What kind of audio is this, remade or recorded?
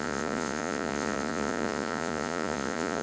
remade